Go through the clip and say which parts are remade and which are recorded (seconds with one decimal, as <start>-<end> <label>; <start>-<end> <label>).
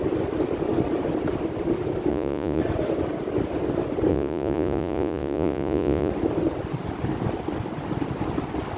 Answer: 0.0-2.1 recorded; 2.1-2.6 remade; 2.6-4.1 recorded; 4.1-6.1 remade; 6.1-8.8 recorded